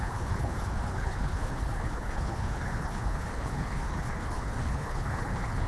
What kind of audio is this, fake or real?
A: fake